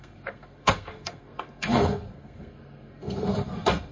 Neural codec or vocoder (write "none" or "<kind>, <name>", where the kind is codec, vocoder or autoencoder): codec, SNAC